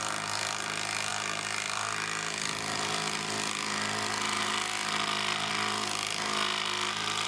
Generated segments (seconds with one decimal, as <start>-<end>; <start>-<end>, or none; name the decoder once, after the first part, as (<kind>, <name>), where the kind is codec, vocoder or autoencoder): none